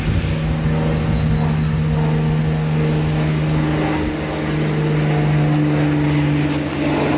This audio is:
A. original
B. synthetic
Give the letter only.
A